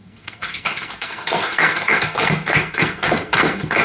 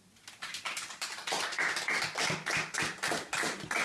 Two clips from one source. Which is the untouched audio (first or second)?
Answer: second